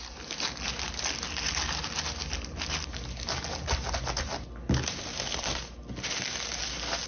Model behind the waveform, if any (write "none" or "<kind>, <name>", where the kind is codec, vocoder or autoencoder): none